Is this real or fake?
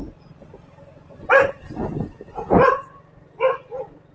real